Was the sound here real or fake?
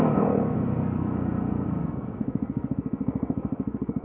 fake